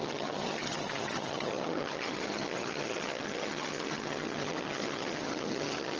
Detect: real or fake fake